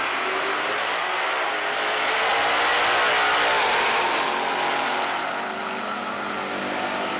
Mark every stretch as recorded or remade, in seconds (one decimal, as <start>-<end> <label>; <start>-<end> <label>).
0.0-7.2 recorded